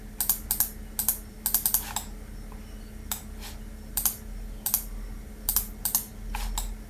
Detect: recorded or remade recorded